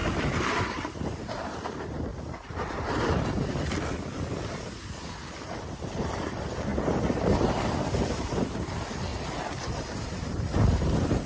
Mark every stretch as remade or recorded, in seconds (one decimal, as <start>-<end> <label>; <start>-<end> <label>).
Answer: 0.0-2.1 remade; 2.1-5.3 recorded; 5.3-9.1 remade; 9.1-9.8 recorded; 9.8-11.3 remade